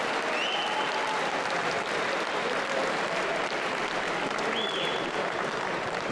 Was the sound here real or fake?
real